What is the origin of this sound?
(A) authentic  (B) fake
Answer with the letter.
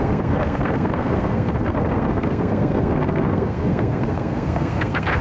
B